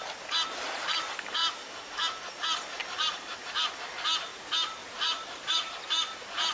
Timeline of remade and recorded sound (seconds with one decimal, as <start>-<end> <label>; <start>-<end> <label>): 0.0-2.8 recorded; 2.8-3.8 remade; 3.8-4.3 recorded; 4.3-5.9 remade; 5.9-6.5 recorded